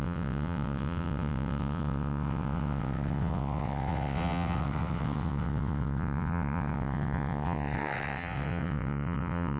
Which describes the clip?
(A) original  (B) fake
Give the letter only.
B